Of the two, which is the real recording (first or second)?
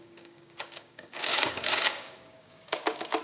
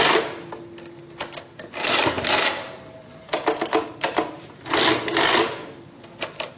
second